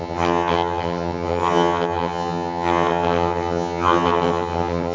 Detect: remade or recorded remade